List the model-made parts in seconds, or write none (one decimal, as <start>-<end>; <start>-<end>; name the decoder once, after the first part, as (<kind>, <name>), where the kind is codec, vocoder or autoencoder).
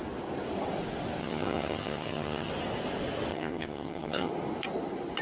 1.2-2.5 (vocoder, HiFi-GAN); 3.3-4.3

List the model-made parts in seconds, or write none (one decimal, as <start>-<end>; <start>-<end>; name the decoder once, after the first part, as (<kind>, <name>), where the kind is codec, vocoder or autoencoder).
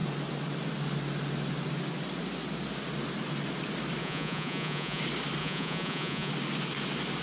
4.0-5.0 (vocoder, Vocos); 5.4-6.3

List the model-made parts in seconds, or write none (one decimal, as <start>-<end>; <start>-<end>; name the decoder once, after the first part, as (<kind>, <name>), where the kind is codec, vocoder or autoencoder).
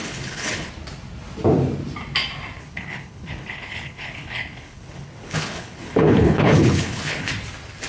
0.0-0.7 (codec, HILCodec); 2.6-7.3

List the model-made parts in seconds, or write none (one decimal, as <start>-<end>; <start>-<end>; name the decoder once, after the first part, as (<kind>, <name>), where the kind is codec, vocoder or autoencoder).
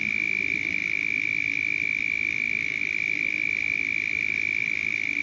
none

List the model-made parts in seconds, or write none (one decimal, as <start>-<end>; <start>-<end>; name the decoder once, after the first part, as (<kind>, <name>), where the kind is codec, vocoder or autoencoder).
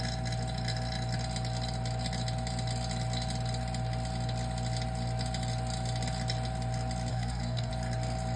7.1-7.7 (codec, SNAC)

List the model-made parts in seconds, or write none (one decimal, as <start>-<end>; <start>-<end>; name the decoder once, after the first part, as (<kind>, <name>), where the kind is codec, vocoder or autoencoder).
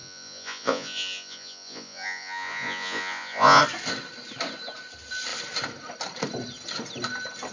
0.0-3.6 (vocoder, Vocos)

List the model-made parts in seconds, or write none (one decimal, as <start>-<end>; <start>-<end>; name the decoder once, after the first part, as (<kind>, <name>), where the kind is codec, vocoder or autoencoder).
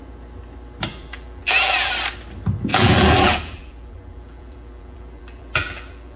0.9-1.9 (vocoder, BigVGAN v2); 2.7-6.2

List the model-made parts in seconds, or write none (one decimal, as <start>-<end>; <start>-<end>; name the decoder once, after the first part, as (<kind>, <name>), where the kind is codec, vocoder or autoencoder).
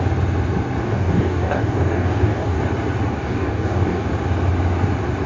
0.8-2.6 (codec, DAC); 3.1-4.0